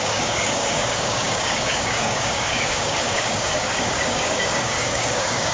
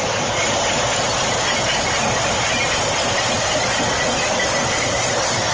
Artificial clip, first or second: first